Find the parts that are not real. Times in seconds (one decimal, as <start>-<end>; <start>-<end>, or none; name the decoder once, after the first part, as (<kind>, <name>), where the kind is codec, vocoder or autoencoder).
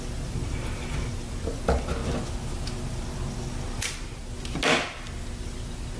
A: none